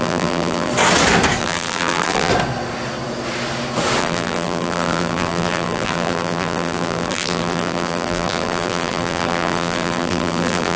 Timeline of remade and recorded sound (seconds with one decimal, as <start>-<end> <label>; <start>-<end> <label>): 0.0-0.7 remade; 0.7-1.4 recorded; 1.4-2.3 remade; 2.3-4.0 recorded; 4.0-10.8 remade